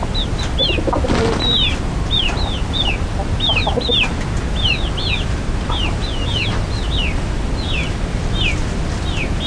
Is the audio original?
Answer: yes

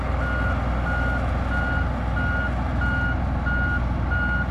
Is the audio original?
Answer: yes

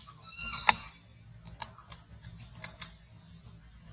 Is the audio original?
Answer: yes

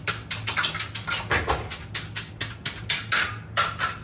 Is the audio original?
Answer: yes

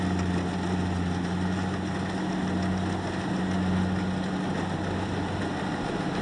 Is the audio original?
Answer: yes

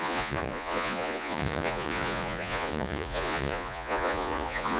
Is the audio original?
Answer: no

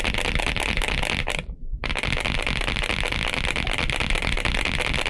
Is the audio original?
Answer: yes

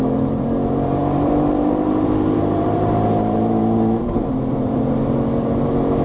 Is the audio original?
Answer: no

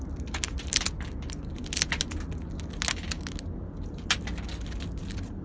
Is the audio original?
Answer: yes